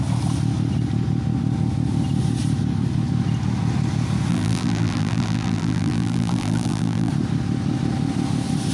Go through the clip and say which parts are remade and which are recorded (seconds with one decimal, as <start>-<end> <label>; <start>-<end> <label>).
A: 0.0-4.3 recorded; 4.3-7.1 remade; 7.1-8.7 recorded

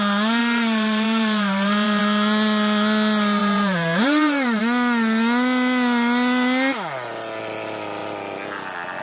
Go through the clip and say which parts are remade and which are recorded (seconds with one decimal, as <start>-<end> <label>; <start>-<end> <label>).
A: 0.0-0.4 recorded; 0.4-2.0 remade; 2.0-3.4 recorded; 3.4-4.6 remade; 4.6-9.0 recorded

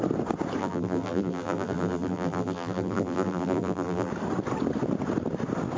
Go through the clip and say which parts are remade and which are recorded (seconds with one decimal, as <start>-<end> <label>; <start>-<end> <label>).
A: 0.0-0.6 recorded; 0.6-4.1 remade; 4.1-5.8 recorded

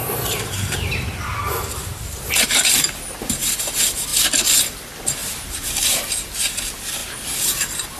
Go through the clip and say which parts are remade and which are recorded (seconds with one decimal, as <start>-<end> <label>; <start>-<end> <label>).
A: 0.0-3.5 remade; 3.5-5.2 recorded; 5.2-6.0 remade; 6.0-8.0 recorded

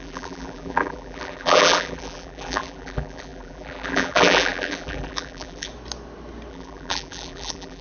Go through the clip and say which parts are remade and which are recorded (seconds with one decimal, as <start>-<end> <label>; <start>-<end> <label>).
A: 0.0-5.7 remade; 5.7-6.5 recorded; 6.5-7.8 remade

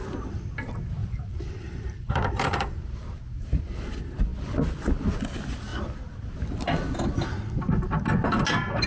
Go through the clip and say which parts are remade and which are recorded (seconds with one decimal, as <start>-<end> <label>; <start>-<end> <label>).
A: 0.0-1.0 recorded; 1.0-3.6 remade; 3.6-8.9 recorded

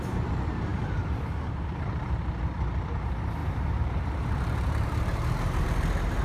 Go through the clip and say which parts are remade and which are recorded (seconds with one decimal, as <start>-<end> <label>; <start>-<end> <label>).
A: 0.0-0.7 recorded; 0.7-2.2 remade; 2.2-3.4 recorded; 3.4-6.2 remade

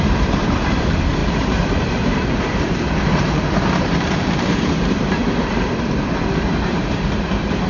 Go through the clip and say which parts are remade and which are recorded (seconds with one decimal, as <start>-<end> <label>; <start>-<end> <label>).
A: 0.0-1.2 remade; 1.2-2.0 recorded; 2.0-7.7 remade